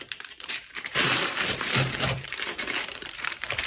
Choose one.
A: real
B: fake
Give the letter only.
B